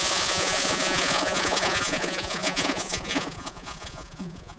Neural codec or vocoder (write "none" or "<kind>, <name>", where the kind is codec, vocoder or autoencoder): vocoder, Vocos